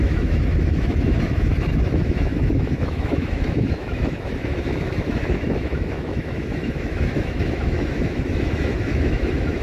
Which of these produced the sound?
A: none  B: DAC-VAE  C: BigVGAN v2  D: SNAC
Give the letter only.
B